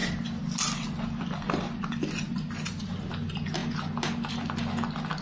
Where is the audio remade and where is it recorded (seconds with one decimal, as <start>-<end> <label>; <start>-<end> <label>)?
0.0-5.2 recorded